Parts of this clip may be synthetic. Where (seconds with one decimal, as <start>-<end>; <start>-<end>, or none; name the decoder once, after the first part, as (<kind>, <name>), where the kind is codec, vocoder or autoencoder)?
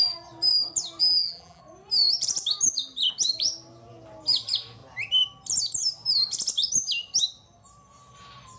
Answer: 1.0-1.6 (vocoder, BigVGAN v2)